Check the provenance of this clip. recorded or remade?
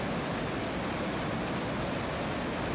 recorded